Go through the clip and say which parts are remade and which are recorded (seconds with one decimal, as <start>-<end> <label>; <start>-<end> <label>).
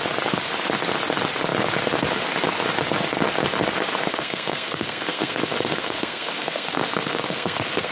0.0-4.1 recorded; 4.1-7.9 remade